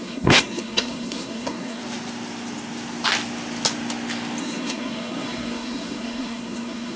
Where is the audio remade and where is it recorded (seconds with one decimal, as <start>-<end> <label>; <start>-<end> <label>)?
0.0-1.8 remade; 1.8-4.4 recorded; 4.4-7.0 remade